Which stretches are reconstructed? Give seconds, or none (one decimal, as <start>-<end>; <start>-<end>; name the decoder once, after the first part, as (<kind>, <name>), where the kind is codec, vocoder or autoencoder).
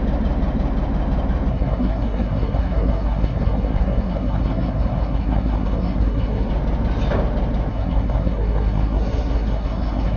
1.5-6.5 (codec, SNAC); 7.7-10.2